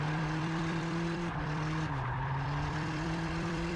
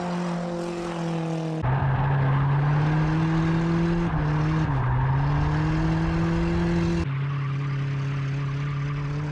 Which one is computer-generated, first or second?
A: first